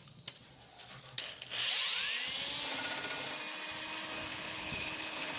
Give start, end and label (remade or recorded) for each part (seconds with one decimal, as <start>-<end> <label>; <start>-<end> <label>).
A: 0.0-4.3 recorded; 4.3-5.4 remade